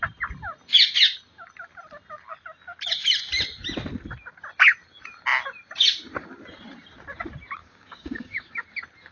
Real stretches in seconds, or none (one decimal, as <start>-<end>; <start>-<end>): 0.0-7.6; 8.6-9.1

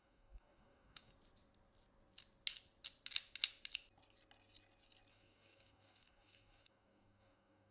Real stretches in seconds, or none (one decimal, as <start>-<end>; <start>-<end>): 1.1-5.1

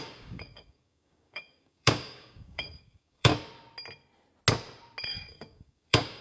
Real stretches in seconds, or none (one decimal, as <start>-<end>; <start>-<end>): 3.3-5.0